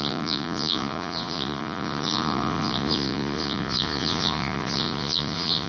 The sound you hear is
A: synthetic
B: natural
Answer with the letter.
A